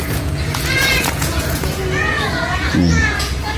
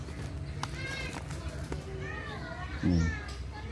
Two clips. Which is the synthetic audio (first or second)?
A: first